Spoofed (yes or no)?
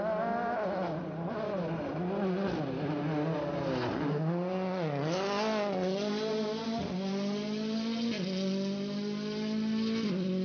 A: no